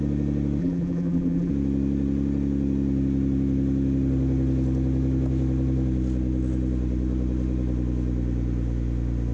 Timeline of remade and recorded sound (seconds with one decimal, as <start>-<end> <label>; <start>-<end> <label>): 0.0-0.6 recorded; 0.6-1.5 remade; 1.5-9.3 recorded